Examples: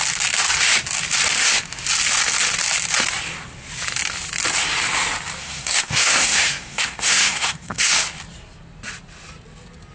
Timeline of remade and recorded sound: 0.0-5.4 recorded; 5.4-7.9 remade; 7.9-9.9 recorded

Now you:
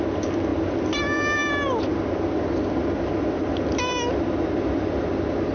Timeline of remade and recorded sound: 0.0-5.5 recorded

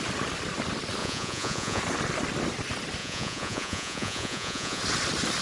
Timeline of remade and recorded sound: 0.0-1.0 recorded; 1.0-1.8 remade; 1.8-3.0 recorded; 3.0-4.8 remade; 4.8-5.4 recorded

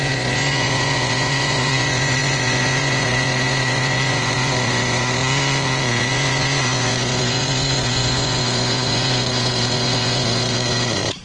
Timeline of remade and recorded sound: 0.0-5.2 remade; 5.2-6.0 recorded; 6.0-11.2 remade

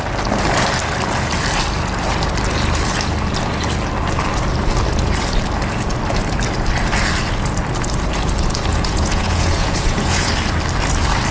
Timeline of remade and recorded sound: 0.0-8.7 recorded; 8.7-10.3 remade; 10.3-11.3 recorded

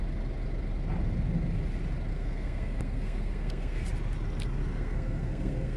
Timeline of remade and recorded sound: 0.0-2.1 recorded; 2.1-3.9 remade; 3.9-4.6 recorded; 4.6-5.8 remade

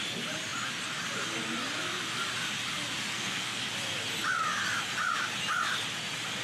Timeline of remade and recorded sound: 0.0-3.1 recorded; 3.1-3.6 remade; 3.6-6.4 recorded